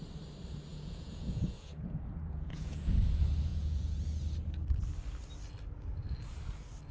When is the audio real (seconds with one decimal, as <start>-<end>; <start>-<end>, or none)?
0.0-0.7; 2.9-3.5; 4.0-6.9